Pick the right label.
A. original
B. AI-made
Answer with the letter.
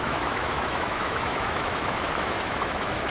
B